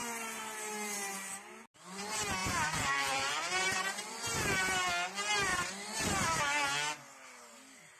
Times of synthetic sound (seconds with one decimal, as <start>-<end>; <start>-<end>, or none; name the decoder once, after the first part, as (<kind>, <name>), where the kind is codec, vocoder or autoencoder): 2.4-4.1 (vocoder, BigVGAN v2); 5.5-6.4